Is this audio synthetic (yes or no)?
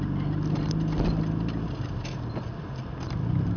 no